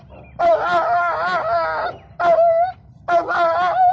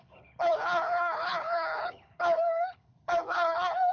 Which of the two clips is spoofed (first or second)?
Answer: second